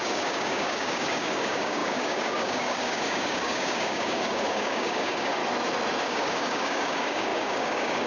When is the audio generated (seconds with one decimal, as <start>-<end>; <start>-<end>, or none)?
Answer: 0.0-5.4; 6.0-8.1